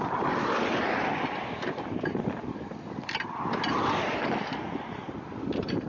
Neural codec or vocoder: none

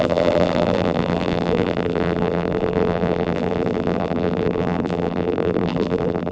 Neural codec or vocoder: vocoder, BigVGAN v2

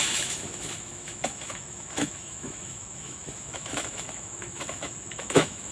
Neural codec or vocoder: autoencoder, DAC-VAE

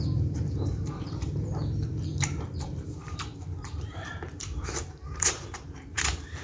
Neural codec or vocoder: vocoder, BigVGAN v2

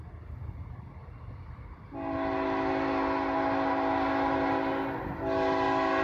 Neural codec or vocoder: none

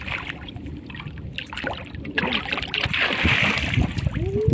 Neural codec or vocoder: none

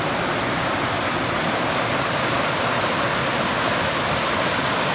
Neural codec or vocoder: none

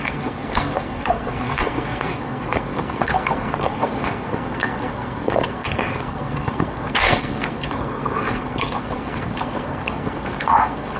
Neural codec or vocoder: codec, SNAC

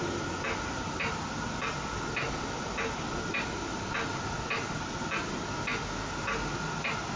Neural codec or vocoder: none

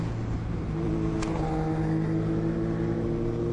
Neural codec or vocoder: none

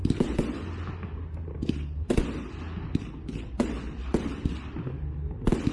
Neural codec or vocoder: none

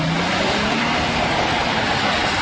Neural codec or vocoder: vocoder, BigVGAN v2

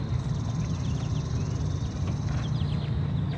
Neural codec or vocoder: none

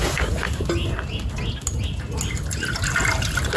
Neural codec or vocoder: none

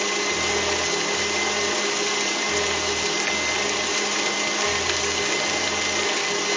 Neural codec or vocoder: none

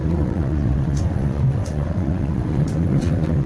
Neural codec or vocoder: vocoder, WaveNeXt